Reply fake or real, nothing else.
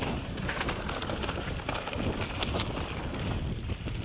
real